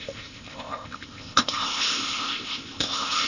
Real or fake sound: fake